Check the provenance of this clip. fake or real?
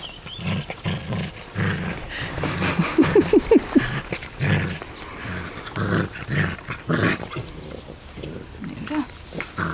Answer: real